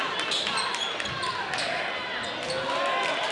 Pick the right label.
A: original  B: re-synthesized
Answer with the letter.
A